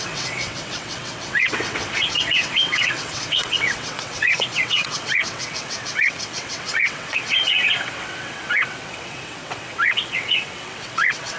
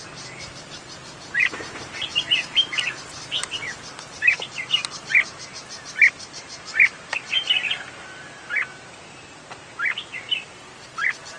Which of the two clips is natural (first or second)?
second